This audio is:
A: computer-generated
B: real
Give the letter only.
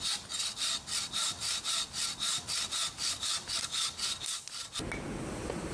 B